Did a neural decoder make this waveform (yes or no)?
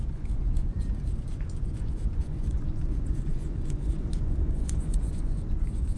yes